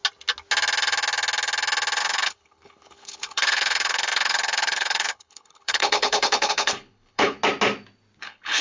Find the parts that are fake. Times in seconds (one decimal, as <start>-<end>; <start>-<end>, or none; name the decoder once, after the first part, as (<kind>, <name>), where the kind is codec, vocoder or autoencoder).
2.0-7.4 (codec, HILCodec); 8.2-8.6